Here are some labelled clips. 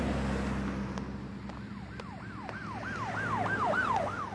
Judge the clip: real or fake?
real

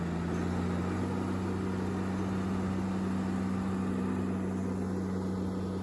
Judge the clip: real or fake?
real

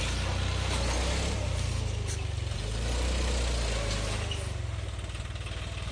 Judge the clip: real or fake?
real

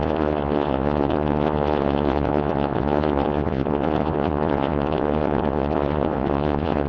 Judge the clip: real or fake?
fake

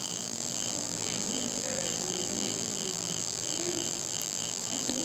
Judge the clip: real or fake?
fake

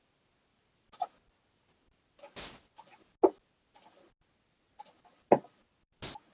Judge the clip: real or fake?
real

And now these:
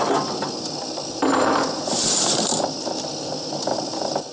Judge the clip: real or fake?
real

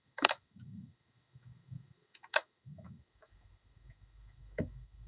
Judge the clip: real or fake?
fake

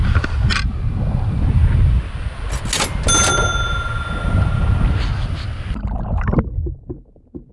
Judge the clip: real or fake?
real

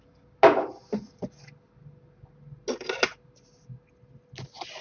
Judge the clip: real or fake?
real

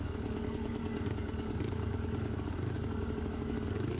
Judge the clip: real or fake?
fake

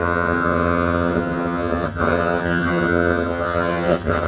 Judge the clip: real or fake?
fake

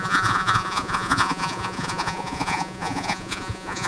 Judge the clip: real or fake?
fake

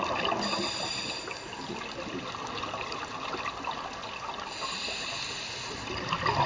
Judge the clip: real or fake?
real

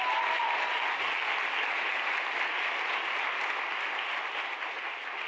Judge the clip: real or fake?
real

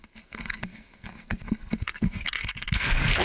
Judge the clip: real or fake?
fake